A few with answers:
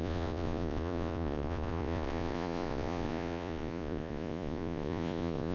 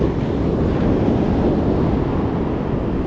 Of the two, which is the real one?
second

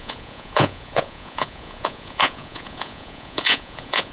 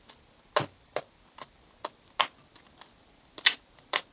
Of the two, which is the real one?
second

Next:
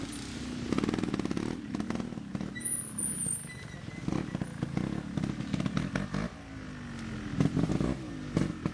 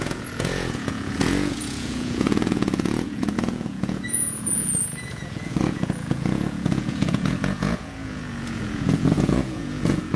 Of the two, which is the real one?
first